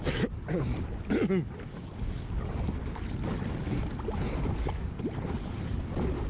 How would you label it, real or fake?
real